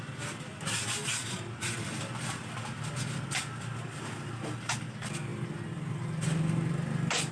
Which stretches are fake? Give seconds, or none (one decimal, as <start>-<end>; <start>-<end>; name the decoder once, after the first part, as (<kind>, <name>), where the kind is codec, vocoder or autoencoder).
none